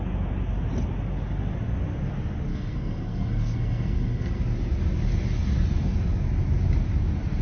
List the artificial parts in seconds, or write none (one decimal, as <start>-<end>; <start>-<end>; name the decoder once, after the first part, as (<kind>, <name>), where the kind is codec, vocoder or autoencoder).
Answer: 2.5-4.4 (codec, SNAC)